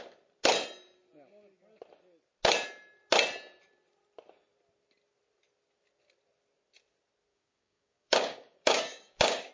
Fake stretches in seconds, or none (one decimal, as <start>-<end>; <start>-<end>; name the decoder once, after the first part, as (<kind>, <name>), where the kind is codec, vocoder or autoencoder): 7.3-9.5 (codec, DAC)